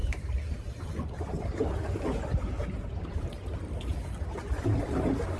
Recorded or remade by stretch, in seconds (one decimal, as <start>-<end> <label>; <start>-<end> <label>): 0.0-5.4 remade